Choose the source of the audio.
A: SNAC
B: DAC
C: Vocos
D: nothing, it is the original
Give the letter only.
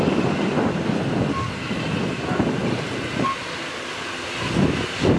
D